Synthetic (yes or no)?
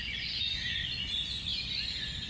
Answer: yes